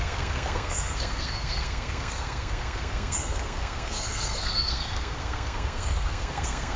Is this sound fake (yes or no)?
yes